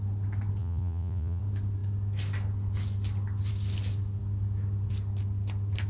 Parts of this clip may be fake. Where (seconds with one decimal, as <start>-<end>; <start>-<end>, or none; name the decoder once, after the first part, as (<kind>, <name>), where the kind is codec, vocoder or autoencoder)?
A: 0.6-1.4 (vocoder, Vocos)

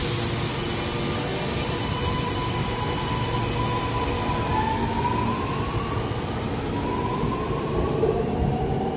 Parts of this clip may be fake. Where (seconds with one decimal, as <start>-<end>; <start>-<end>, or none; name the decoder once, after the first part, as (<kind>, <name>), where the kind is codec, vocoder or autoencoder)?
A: 1.3-2.5 (vocoder, BigVGAN v2); 7.1-9.0

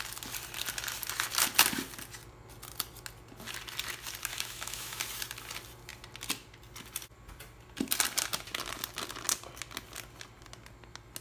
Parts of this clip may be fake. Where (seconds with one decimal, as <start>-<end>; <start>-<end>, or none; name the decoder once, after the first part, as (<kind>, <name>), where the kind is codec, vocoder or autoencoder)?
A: 4.3-5.0 (autoencoder, DAC-VAE)